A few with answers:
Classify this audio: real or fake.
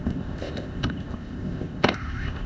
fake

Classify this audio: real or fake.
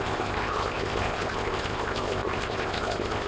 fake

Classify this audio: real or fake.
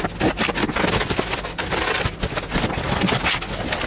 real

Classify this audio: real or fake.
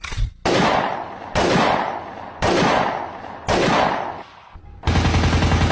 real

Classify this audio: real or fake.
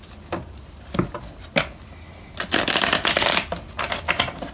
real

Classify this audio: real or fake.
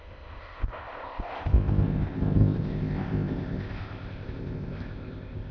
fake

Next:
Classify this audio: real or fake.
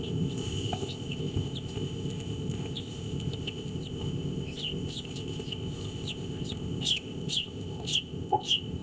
fake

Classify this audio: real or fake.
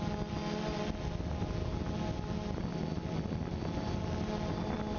real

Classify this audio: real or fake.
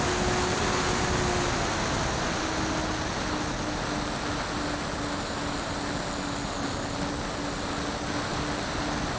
real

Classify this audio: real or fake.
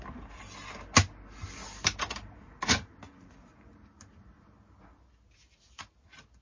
real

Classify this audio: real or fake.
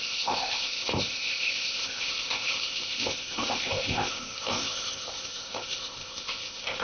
fake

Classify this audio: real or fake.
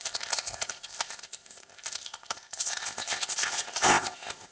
fake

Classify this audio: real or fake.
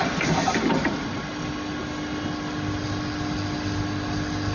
real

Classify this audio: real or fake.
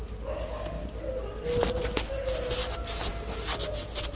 real